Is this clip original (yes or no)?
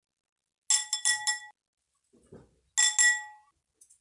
yes